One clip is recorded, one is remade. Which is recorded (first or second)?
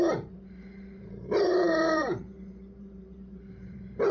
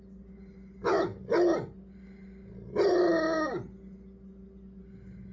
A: second